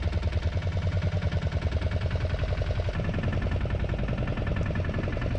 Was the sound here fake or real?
real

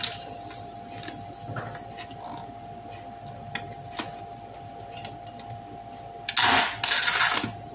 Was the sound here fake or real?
real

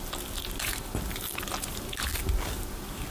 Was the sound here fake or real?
real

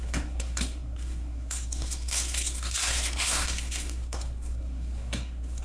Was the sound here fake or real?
fake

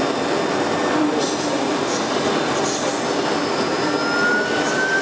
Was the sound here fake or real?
real